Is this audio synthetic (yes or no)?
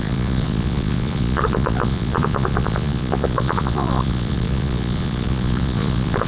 yes